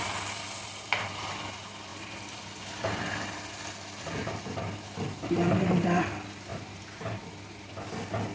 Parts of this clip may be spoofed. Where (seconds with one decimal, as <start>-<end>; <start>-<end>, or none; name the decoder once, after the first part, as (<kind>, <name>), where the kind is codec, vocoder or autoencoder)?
6.5-7.7 (vocoder, BigVGAN v2)